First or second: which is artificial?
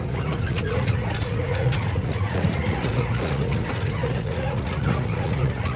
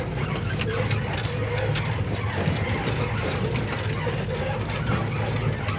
first